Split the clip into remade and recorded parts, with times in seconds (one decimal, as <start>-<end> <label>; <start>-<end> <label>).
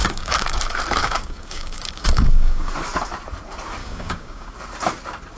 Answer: 0.0-0.6 remade; 0.6-1.0 recorded; 1.0-2.7 remade; 2.7-3.8 recorded; 3.8-4.5 remade; 4.5-5.4 recorded